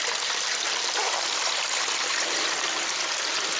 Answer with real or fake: real